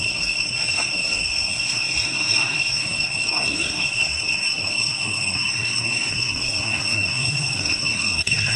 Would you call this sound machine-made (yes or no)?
yes